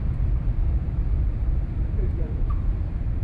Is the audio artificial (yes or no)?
yes